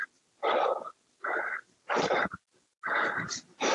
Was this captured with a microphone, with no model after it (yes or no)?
yes